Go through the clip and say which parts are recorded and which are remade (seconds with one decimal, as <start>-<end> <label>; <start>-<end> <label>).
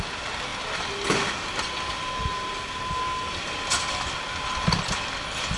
0.0-5.6 recorded